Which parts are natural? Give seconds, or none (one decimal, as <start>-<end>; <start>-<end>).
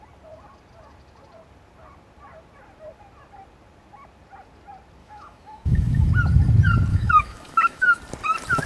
0.0-5.0; 6.1-6.9; 8.0-8.7